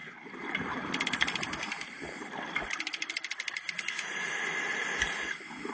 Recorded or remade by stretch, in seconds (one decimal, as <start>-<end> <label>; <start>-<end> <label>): 0.0-5.7 recorded